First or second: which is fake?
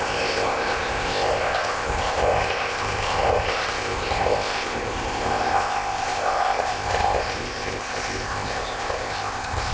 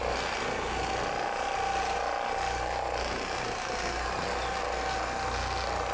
first